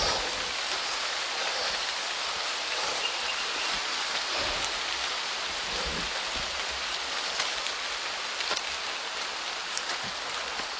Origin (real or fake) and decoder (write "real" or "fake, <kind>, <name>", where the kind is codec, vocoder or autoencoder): real